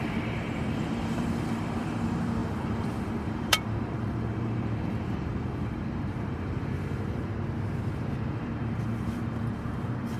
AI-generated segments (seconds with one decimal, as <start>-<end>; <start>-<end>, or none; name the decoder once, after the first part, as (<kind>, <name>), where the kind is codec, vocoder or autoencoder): 0.0-7.3 (vocoder, BigVGAN v2); 7.9-10.2